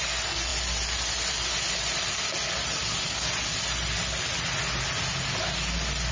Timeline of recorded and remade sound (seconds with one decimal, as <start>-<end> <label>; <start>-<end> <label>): 0.0-6.1 recorded